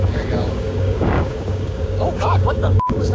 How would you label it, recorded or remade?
remade